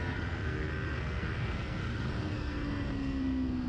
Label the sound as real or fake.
fake